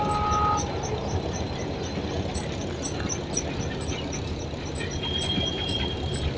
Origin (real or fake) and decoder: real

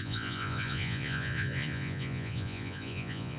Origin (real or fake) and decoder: fake, vocoder, Vocos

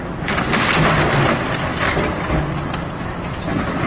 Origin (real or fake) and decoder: real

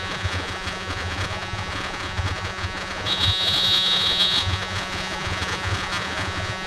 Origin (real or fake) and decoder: fake, vocoder, Vocos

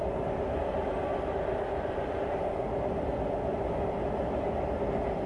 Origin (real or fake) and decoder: real